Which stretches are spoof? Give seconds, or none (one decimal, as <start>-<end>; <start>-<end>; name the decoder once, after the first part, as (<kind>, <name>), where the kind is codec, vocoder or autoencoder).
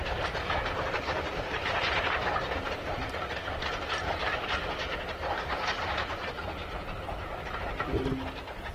1.1-2.0 (vocoder, BigVGAN v2); 6.6-7.4